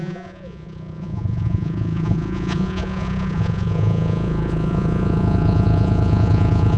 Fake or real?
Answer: fake